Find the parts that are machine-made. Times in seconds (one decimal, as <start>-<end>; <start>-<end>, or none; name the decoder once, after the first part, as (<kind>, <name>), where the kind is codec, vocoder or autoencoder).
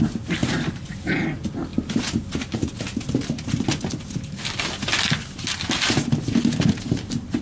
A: 0.4-1.1 (vocoder, BigVGAN v2)